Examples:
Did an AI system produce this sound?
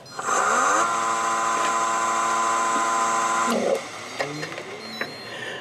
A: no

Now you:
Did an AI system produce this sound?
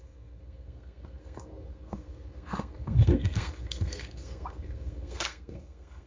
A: yes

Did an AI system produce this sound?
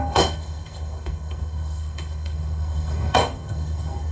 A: yes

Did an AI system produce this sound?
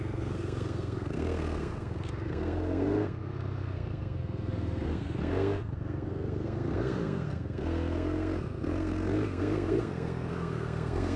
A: yes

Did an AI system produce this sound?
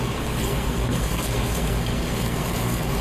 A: yes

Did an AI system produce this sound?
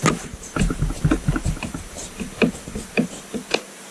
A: no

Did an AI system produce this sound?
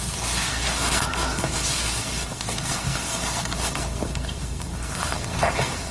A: yes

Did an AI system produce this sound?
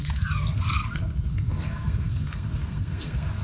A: yes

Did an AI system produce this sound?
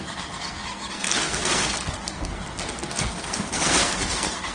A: yes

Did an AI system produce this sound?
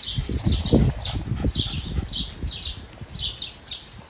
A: no